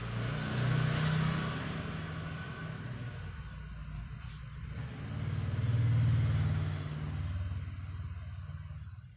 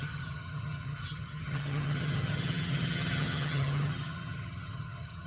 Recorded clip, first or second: first